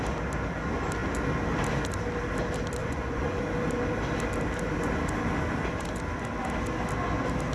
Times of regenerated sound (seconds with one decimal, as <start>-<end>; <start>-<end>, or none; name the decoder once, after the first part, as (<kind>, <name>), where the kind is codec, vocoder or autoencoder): 2.8-3.4 (vocoder, Vocos)